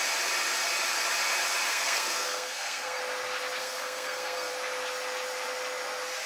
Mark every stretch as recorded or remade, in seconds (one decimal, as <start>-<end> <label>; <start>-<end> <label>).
0.0-1.7 recorded; 1.7-3.0 remade; 3.0-3.6 recorded; 3.6-4.5 remade; 4.5-6.3 recorded